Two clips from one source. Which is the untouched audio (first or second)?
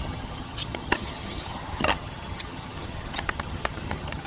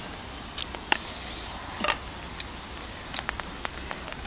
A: second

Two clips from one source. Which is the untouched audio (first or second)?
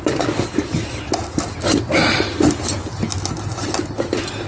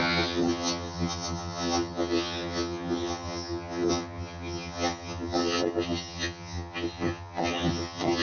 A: first